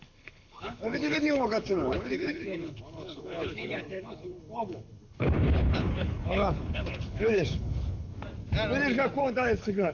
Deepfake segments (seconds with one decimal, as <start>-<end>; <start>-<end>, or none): 0.0-8.1; 9.2-9.9